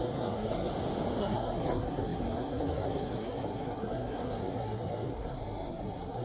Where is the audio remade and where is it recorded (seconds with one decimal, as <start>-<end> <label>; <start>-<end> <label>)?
0.0-0.7 remade; 0.7-1.2 recorded; 1.2-6.2 remade